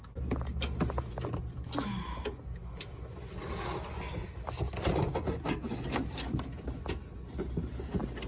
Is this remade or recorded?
recorded